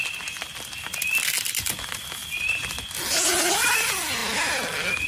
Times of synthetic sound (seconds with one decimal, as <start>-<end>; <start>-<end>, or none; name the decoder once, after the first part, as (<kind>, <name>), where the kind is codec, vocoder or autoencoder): 2.2-2.9 (vocoder, BigVGAN v2)